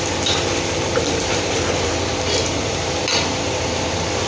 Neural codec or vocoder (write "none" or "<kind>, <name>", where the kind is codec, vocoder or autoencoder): none